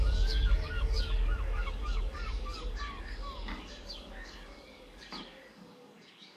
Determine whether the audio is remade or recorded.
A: remade